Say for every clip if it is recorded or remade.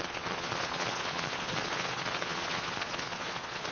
remade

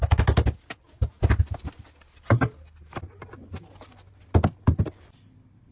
recorded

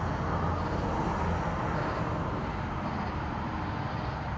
recorded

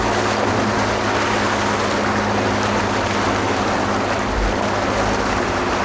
recorded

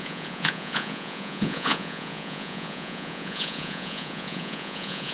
remade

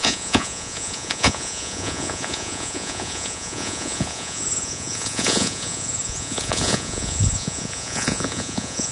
remade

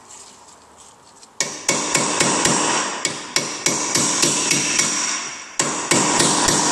recorded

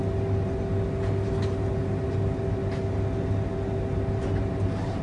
recorded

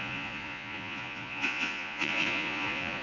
remade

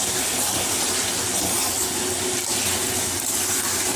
recorded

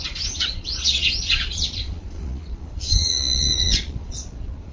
remade